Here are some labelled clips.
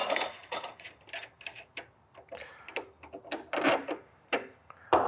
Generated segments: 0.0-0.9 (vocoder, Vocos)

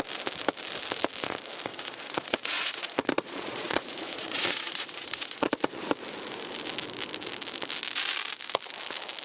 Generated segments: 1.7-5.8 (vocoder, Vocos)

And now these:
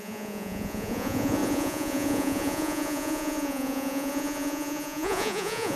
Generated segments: 0.0-5.8 (vocoder, Vocos)

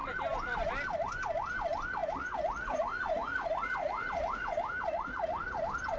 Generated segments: 2.0-5.6 (vocoder, Vocos)

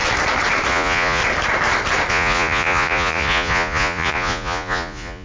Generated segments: 0.7-1.2 (vocoder, Vocos); 2.1-5.2